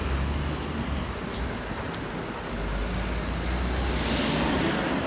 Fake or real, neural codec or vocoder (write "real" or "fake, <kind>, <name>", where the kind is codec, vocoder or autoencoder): real